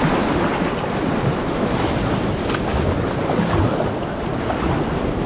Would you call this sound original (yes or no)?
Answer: yes